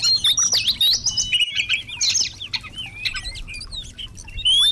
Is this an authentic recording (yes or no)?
yes